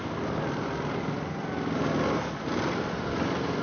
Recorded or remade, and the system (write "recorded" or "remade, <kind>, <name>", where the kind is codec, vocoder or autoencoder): recorded